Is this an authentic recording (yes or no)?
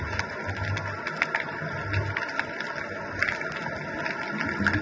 yes